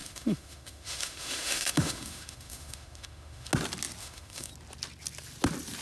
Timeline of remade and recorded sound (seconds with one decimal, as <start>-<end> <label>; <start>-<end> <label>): 0.0-3.5 remade; 3.5-4.0 recorded; 4.0-4.5 remade; 4.5-5.8 recorded